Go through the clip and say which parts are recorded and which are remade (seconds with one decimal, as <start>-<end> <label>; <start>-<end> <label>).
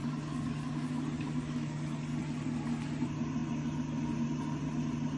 0.0-2.2 remade; 2.2-5.2 recorded